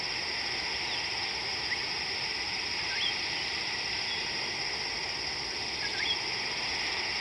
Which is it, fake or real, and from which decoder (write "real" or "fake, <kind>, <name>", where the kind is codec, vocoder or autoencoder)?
real